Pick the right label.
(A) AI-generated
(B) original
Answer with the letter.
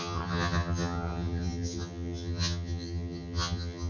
A